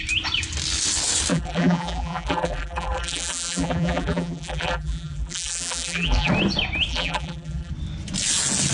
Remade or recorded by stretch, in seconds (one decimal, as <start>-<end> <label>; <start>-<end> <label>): 0.0-1.3 recorded; 1.3-6.3 remade; 6.3-6.9 recorded; 6.9-7.7 remade; 7.7-8.7 recorded